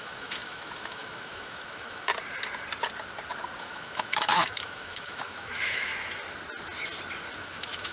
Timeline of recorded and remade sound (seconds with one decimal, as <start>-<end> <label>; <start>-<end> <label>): 0.0-2.1 remade; 2.1-3.6 recorded; 3.6-5.9 remade; 5.9-7.4 recorded; 7.4-7.9 remade